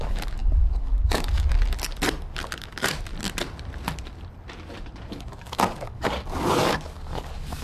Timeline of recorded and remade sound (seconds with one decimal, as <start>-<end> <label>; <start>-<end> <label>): 0.0-1.6 remade; 1.6-2.6 recorded; 2.6-3.1 remade; 3.1-5.1 recorded; 5.1-7.6 remade